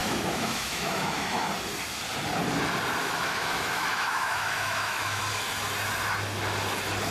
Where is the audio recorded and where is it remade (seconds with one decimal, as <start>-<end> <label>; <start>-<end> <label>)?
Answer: 0.0-1.5 remade; 1.5-3.0 recorded; 3.0-5.2 remade; 5.2-7.1 recorded